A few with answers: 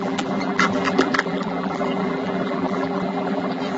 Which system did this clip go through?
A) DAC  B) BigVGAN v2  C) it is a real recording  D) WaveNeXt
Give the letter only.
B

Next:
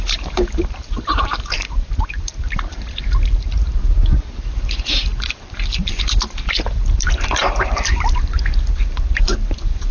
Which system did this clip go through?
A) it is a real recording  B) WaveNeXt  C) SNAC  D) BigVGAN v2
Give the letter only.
D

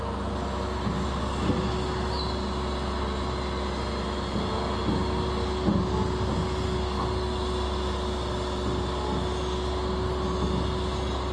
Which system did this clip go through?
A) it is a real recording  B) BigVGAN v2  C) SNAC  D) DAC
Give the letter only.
A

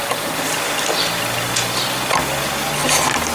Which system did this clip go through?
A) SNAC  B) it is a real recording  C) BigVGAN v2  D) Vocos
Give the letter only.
B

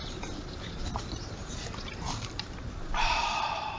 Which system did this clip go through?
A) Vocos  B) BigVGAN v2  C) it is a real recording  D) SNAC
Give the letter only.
B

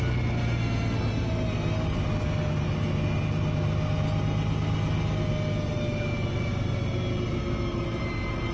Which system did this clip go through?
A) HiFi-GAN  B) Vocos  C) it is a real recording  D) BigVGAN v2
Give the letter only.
C